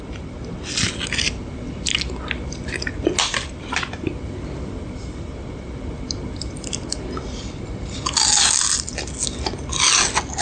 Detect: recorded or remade recorded